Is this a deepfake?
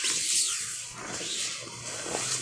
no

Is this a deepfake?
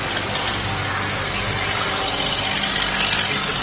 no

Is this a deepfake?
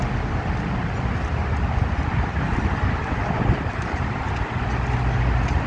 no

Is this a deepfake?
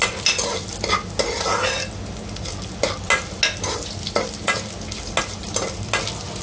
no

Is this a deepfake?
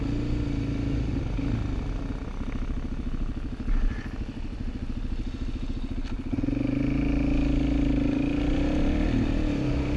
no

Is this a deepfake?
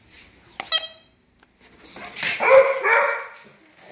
no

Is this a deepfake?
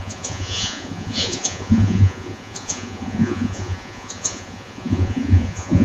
yes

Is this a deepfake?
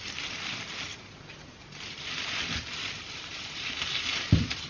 no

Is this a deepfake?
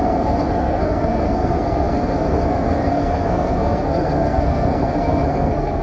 yes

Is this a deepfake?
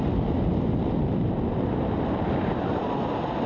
no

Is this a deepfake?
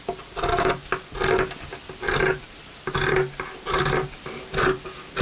no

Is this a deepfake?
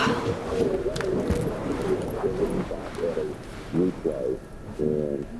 no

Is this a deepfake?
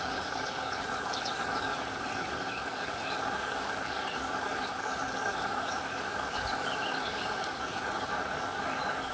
yes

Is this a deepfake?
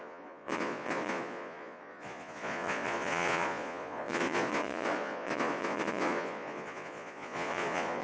yes